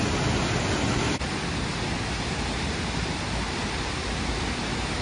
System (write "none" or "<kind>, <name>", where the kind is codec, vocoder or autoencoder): none